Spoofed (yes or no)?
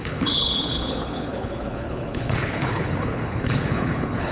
yes